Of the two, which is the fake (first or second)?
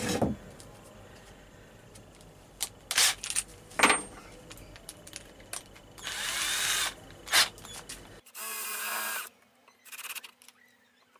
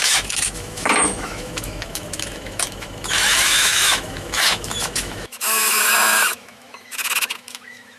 second